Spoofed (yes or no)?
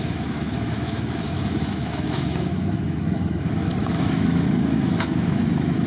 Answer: yes